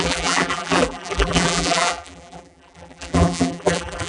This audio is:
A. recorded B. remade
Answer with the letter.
B